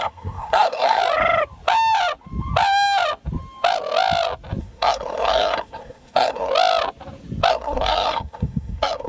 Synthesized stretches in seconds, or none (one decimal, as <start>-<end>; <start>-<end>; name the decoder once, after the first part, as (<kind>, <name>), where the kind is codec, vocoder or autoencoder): 0.0-1.0 (codec, SNAC); 4.6-6.5; 7.5-9.1

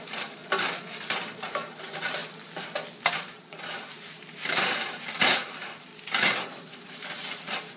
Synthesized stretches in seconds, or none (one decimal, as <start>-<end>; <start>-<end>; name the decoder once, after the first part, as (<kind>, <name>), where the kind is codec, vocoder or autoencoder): 0.0-0.4 (vocoder, BigVGAN v2); 1.5-2.2; 3.1-5.9; 6.6-7.8

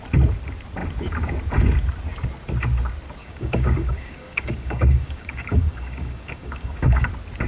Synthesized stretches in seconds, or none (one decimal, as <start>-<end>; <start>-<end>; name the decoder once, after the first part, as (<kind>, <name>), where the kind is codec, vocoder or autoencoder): 3.2-7.1 (codec, DAC)

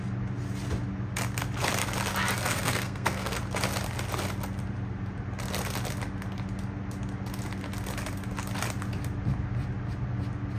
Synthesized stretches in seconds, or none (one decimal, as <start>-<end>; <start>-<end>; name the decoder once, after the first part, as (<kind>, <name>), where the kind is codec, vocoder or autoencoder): 2.5-3.4 (codec, SNAC)

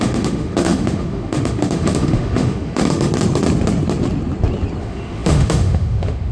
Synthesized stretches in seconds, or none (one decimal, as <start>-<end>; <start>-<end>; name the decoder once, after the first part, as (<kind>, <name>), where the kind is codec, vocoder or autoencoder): 0.0-3.1 (autoencoder, DAC-VAE); 4.8-6.3

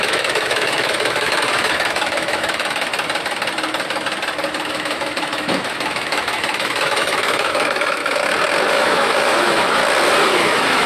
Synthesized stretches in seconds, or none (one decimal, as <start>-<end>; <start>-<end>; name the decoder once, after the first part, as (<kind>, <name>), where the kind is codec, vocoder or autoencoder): 0.0-2.9 (autoencoder, DAC-VAE); 4.7-8.0; 8.7-9.8; 10.4-10.9

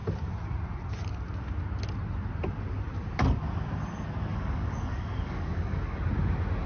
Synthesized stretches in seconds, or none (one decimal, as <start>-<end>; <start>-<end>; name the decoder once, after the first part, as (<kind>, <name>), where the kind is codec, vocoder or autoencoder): 4.3-6.0 (codec, DAC)

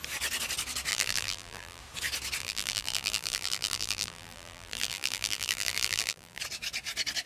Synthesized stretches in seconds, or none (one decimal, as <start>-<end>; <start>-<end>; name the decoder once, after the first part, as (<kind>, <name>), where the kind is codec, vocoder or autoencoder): 0.9-1.8 (vocoder, BigVGAN v2); 2.4-6.4